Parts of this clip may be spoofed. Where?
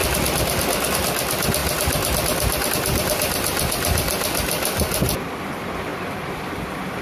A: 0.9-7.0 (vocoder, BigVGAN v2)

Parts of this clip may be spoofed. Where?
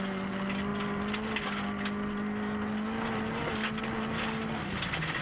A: none